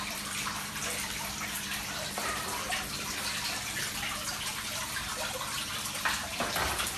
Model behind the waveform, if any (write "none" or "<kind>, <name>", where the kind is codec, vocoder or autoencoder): vocoder, BigVGAN v2